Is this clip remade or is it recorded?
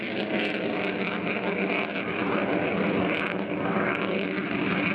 recorded